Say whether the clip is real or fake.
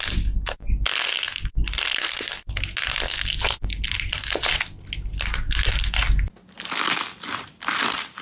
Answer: real